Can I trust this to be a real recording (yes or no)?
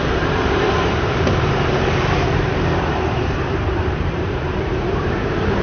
no